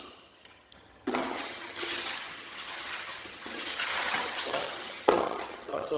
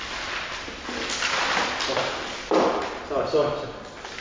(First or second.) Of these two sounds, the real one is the second